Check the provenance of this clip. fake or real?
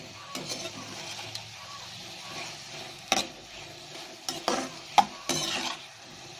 real